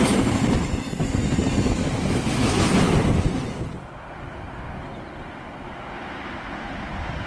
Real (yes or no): yes